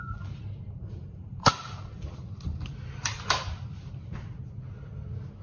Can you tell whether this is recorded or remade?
recorded